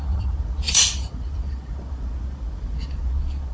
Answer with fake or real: fake